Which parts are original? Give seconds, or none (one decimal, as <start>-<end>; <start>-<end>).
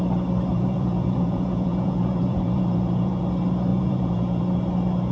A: 0.0-0.5; 3.2-3.7; 4.4-5.1